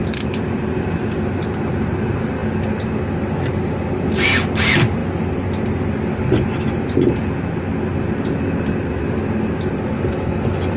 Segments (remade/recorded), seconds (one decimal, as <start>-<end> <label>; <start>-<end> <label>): 0.0-10.8 recorded